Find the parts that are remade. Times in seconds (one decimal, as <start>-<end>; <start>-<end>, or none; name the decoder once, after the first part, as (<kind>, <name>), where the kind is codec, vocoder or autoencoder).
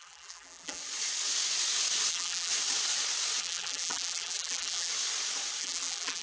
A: 0.0-0.8 (vocoder, BigVGAN v2); 2.1-2.5; 3.4-4.9; 5.6-6.2